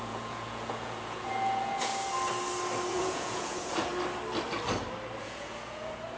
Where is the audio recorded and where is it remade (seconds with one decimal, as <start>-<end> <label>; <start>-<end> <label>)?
0.0-1.9 remade; 1.9-2.9 recorded; 2.9-3.9 remade; 3.9-5.2 recorded; 5.2-6.2 remade